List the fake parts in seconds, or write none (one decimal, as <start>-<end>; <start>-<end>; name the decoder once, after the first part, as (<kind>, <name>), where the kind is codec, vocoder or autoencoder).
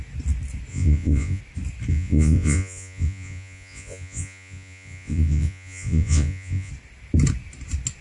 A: 0.7-1.4 (vocoder, Vocos); 1.9-6.7